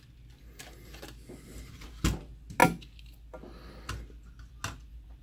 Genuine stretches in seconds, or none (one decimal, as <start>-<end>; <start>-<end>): 0.0-5.2

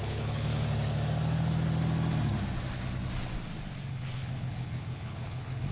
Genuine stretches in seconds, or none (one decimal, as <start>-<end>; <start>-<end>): 0.5-3.9